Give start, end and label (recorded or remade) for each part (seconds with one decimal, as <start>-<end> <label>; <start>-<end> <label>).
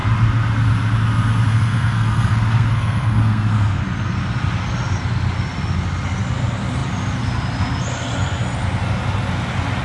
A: 0.0-1.5 recorded; 1.5-3.8 remade; 3.8-9.8 recorded